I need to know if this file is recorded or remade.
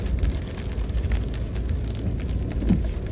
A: recorded